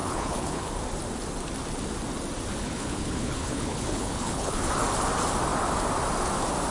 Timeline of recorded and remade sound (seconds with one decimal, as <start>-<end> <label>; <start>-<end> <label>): 0.0-0.7 remade; 0.7-2.6 recorded; 2.6-4.7 remade; 4.7-6.7 recorded